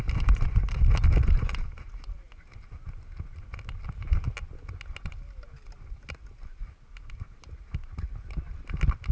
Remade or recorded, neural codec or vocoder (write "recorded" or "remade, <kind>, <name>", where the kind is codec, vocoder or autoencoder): recorded